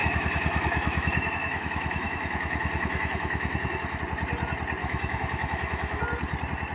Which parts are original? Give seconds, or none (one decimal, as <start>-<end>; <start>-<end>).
4.0-4.8; 6.0-6.7